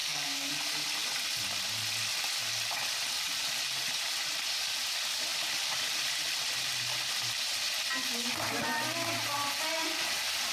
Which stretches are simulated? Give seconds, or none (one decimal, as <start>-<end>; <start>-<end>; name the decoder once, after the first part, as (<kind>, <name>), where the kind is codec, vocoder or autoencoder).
0.0-0.5 (codec, SNAC)